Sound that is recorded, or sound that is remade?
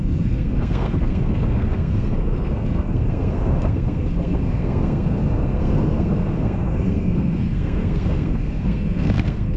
remade